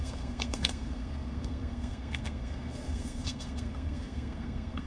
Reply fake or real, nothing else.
fake